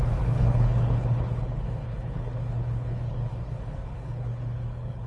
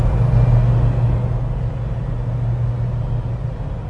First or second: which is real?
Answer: second